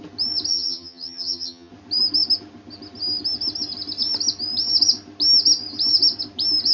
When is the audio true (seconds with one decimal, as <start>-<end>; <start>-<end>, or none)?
0.0-0.5; 1.7-6.7